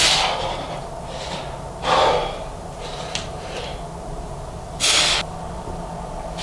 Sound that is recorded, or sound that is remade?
recorded